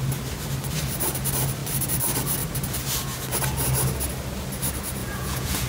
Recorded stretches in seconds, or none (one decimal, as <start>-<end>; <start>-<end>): 0.0-5.0